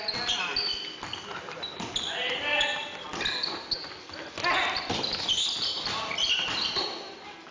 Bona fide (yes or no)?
yes